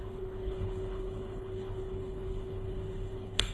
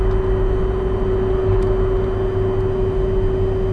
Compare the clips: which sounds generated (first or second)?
first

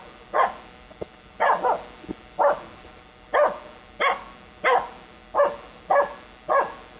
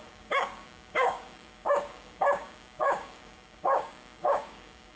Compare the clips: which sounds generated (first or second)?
second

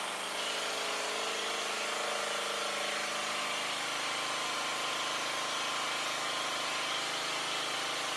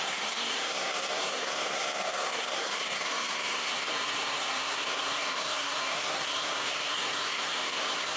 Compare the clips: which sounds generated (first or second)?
second